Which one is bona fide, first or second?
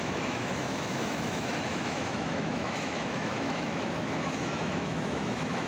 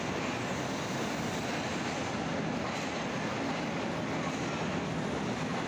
second